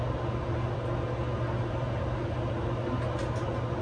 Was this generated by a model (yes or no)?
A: no